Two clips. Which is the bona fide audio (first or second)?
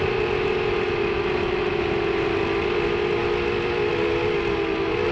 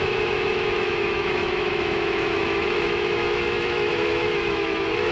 first